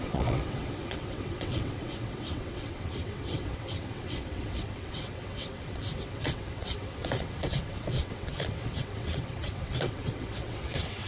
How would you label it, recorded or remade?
remade